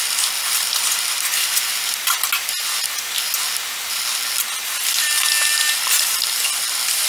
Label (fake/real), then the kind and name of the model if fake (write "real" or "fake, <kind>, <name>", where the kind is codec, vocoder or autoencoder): real